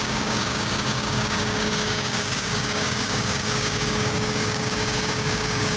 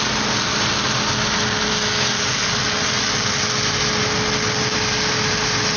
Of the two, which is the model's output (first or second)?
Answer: first